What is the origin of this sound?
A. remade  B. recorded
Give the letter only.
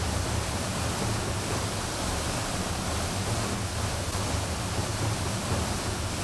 A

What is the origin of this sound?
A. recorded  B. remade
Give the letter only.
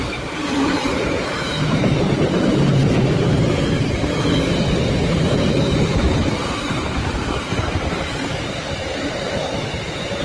B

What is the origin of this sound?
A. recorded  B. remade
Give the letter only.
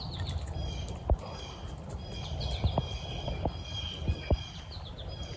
B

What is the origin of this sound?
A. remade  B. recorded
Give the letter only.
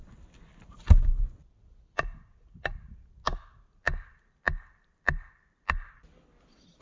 B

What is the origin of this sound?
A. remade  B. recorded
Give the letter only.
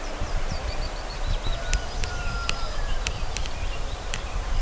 A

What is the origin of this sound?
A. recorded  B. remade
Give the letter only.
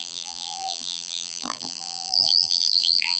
B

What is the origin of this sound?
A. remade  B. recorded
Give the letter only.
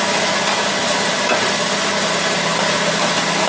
B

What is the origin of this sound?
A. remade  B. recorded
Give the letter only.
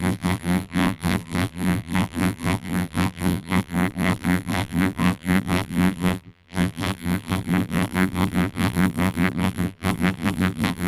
A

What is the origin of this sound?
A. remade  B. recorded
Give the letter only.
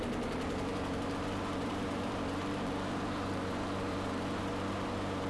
A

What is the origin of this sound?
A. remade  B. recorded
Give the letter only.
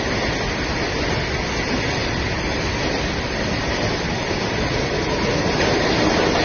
B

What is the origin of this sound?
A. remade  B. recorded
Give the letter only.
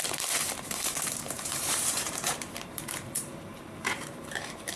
A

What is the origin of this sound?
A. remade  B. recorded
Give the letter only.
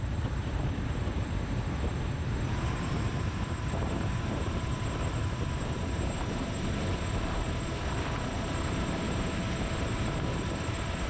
A